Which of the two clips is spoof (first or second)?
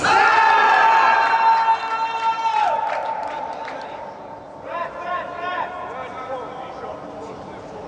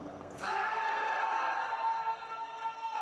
second